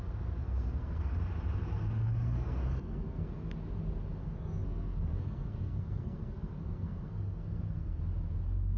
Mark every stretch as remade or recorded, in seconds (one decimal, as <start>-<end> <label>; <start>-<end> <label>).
0.0-0.4 recorded; 0.4-1.2 remade; 1.2-1.6 recorded; 1.6-3.5 remade; 3.5-4.2 recorded; 4.2-8.0 remade; 8.0-8.8 recorded